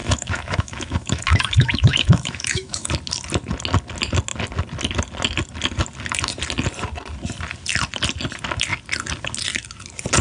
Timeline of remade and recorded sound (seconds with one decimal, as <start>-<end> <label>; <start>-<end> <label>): 0.0-2.9 remade; 2.9-10.2 recorded